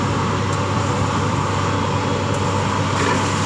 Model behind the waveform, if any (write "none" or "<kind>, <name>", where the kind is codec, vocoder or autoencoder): none